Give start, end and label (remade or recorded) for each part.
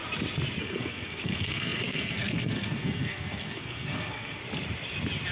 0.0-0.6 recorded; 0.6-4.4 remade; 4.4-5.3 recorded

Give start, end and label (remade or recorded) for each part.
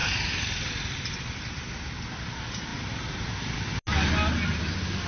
0.0-5.1 recorded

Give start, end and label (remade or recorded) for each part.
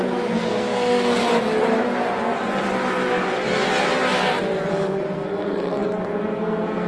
0.0-1.2 remade; 1.2-4.7 recorded; 4.7-6.9 remade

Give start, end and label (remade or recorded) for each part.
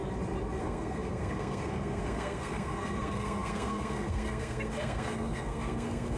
0.0-0.6 recorded; 0.6-6.2 remade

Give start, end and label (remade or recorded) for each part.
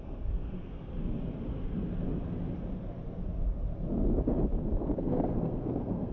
0.0-0.9 remade; 0.9-4.6 recorded; 4.6-6.1 remade